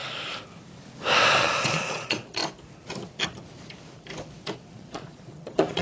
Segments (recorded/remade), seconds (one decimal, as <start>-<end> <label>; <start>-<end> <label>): 0.0-1.4 recorded; 1.4-2.4 remade; 2.4-4.7 recorded; 4.7-5.8 remade